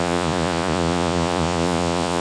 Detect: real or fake fake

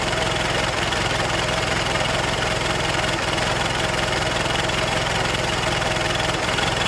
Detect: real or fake fake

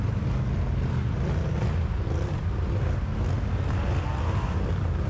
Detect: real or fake real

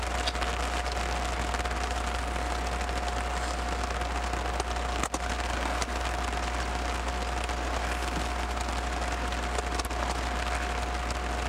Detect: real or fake real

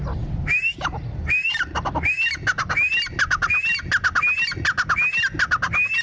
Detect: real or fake real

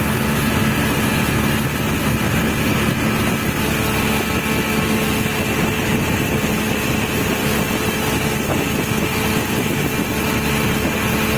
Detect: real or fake real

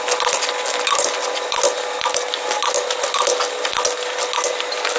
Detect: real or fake real